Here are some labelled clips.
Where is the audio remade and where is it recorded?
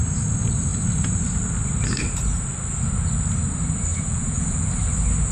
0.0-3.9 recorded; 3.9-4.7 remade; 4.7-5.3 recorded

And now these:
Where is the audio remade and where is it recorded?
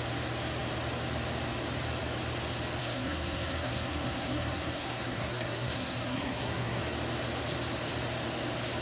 0.0-2.8 recorded; 2.8-6.8 remade; 6.8-8.8 recorded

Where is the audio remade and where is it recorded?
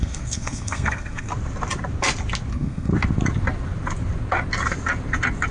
0.0-1.3 remade; 1.3-2.5 recorded; 2.5-2.9 remade; 2.9-5.5 recorded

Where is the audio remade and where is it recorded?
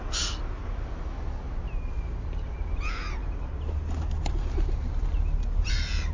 0.0-6.1 recorded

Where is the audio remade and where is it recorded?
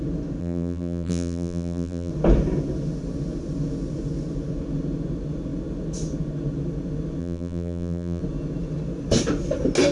0.0-0.4 recorded; 0.4-2.1 remade; 2.1-7.2 recorded; 7.2-8.2 remade; 8.2-9.9 recorded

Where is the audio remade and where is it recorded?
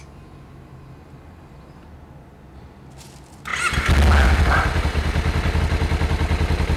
0.0-6.8 recorded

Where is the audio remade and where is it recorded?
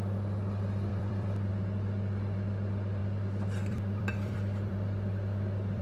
0.0-0.9 recorded; 0.9-1.5 remade; 1.5-3.0 recorded; 3.0-5.8 remade